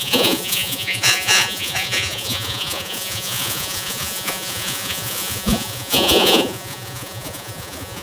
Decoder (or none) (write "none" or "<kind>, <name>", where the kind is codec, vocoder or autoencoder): vocoder, Vocos